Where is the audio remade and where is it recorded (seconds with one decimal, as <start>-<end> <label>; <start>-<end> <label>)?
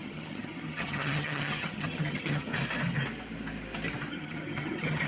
0.0-2.5 remade; 2.5-4.1 recorded; 4.1-5.1 remade